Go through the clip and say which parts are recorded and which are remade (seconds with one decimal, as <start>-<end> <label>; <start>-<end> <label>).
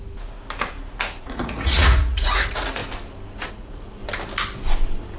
0.0-1.2 recorded; 1.2-2.8 remade; 2.8-3.5 recorded; 3.5-4.0 remade; 4.0-5.2 recorded